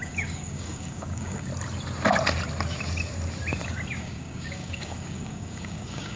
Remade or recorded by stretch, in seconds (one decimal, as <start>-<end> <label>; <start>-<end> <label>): 0.0-1.5 remade; 1.5-4.0 recorded; 4.0-6.2 remade